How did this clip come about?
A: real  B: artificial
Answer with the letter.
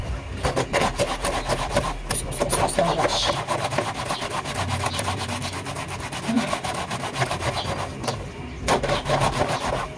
A